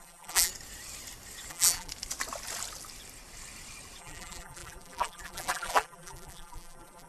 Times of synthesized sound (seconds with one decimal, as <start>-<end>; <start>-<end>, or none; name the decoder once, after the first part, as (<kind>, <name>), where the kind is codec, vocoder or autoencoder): 0.0-0.5 (vocoder, BigVGAN v2); 1.5-1.9; 4.0-7.1